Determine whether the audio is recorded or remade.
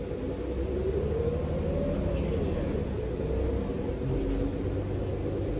recorded